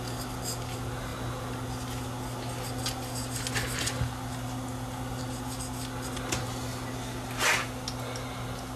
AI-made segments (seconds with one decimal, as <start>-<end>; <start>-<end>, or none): none